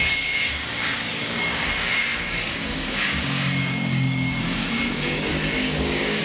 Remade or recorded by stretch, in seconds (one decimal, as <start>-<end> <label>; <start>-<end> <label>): 0.0-6.2 remade